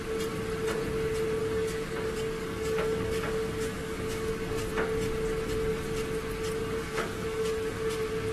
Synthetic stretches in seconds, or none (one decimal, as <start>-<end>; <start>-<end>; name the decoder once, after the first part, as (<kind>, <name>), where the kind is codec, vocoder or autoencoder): 1.4-4.7 (codec, DAC); 6.6-7.7